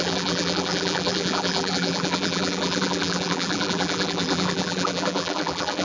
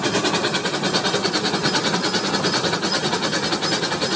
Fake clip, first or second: first